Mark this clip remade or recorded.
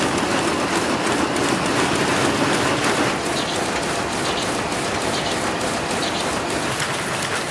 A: recorded